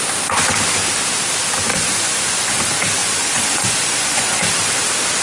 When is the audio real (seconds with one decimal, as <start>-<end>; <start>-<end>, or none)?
0.0-1.7; 2.6-3.0; 4.5-5.2